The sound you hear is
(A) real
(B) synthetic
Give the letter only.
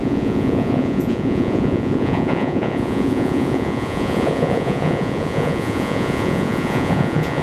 B